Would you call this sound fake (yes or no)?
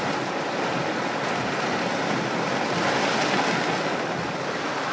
no